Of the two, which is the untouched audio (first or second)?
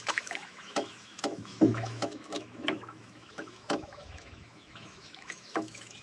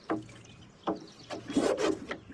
second